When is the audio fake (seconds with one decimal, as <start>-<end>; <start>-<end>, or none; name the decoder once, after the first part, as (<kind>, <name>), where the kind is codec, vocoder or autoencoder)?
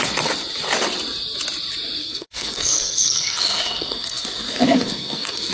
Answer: 2.0-5.5 (codec, SNAC)